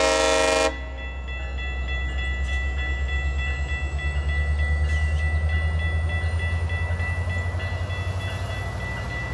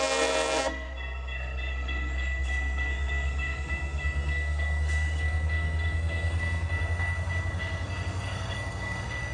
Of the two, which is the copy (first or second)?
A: second